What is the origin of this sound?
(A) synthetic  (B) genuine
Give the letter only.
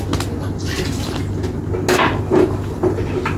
B